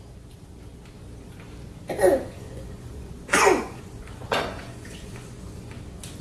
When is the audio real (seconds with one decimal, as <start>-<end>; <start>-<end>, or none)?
0.0-2.0; 5.7-6.2